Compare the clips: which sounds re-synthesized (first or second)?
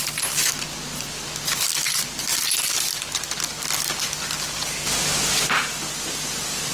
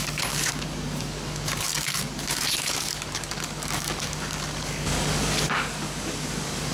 second